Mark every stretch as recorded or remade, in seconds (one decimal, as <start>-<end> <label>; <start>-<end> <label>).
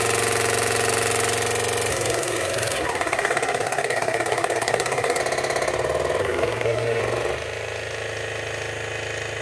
0.0-1.9 recorded; 1.9-5.2 remade; 5.2-6.2 recorded; 6.2-7.0 remade; 7.0-9.4 recorded